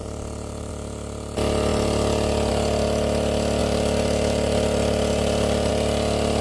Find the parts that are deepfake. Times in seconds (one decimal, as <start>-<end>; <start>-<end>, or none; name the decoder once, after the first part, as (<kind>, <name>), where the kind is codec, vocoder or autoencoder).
0.0-0.7 (vocoder, BigVGAN v2); 3.6-5.7